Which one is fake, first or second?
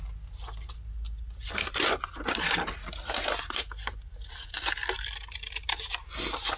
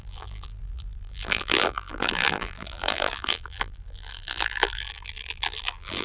second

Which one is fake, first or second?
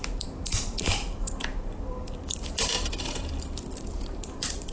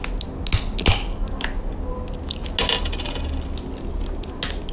first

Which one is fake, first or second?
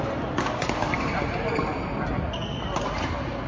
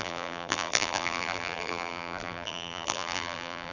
second